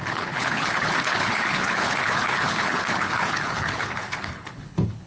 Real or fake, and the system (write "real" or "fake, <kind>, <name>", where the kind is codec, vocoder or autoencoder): fake, codec, HILCodec